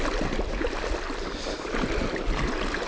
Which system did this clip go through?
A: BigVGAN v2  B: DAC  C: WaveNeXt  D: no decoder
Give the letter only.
D